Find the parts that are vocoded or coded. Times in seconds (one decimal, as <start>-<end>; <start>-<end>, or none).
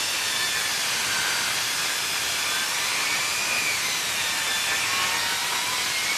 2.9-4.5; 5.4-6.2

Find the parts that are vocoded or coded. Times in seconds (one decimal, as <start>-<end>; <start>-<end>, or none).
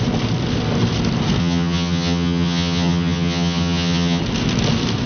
1.4-4.2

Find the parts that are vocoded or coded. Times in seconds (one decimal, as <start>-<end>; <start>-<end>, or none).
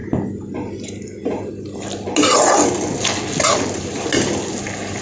none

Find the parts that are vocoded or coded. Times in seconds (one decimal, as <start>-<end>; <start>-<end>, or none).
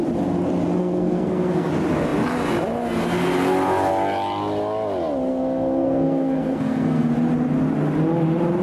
0.8-1.7; 5.3-7.1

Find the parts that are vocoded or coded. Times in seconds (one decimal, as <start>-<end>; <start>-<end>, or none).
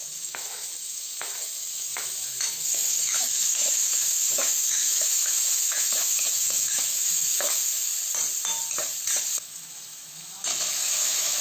0.0-7.9; 9.4-11.4